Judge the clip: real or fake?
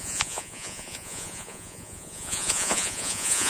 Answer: fake